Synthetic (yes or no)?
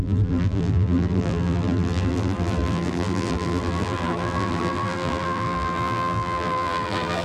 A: yes